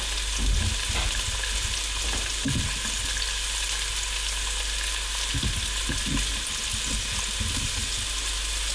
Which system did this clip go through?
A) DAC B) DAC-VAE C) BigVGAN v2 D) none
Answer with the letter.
D